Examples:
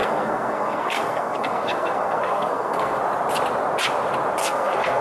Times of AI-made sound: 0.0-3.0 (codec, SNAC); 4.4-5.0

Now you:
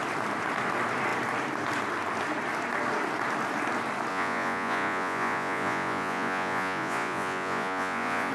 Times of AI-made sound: 4.1-8.3 (vocoder, Vocos)

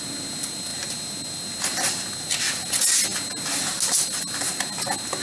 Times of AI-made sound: none

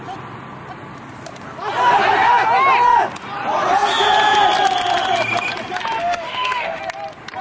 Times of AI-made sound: 6.0-6.8 (autoencoder, DAC-VAE)

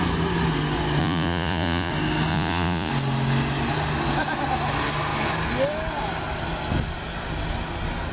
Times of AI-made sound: 1.0-1.9 (vocoder, Vocos); 2.3-2.9

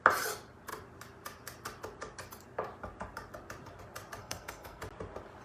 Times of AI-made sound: 4.2-4.8 (codec, SNAC)